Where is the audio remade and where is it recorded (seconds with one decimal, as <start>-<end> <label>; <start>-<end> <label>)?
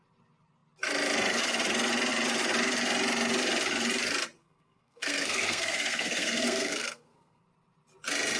0.0-4.4 recorded; 4.4-7.4 remade; 7.4-8.4 recorded